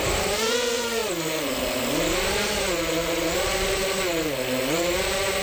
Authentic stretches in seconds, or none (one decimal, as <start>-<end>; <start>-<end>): 0.0-5.4